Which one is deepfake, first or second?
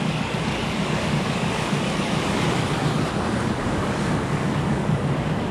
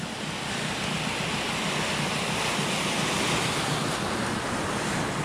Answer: first